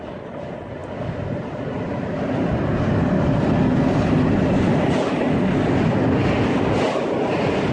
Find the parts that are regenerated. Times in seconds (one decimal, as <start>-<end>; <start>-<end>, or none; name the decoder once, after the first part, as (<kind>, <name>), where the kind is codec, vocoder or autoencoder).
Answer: none